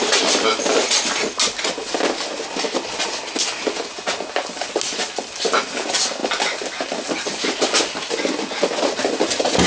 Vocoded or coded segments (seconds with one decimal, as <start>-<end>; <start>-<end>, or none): none